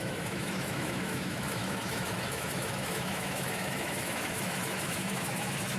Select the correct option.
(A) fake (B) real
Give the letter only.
A